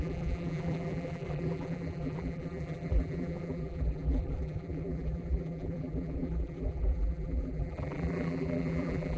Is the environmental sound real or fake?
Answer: fake